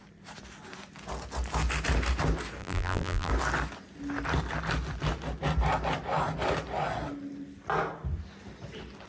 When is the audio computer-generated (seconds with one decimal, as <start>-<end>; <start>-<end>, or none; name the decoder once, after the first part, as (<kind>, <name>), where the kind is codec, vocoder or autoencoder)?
2.6-3.3 (vocoder, BigVGAN v2)